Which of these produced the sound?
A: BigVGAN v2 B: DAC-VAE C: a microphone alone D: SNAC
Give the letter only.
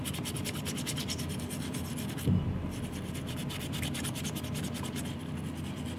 C